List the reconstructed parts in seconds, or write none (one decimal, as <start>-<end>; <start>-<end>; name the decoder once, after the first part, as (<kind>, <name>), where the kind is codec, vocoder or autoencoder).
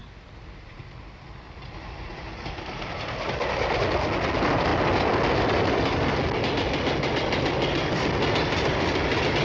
none